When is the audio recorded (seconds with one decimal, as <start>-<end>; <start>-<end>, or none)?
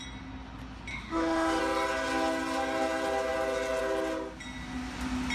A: 0.0-0.9; 1.6-5.3